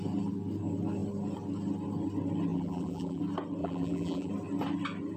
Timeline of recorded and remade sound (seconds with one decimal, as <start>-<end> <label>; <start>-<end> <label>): 0.0-2.5 recorded; 2.5-3.2 remade; 3.2-3.6 recorded; 3.6-4.3 remade; 4.3-5.2 recorded